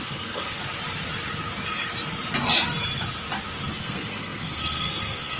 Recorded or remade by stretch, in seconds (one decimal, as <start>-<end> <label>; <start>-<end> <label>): 0.0-0.6 remade; 0.6-3.8 recorded; 3.8-5.4 remade